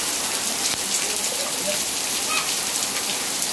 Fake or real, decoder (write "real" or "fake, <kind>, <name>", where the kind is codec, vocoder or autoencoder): real